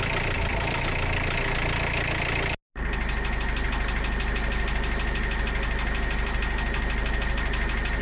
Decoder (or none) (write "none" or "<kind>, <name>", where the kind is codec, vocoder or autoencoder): none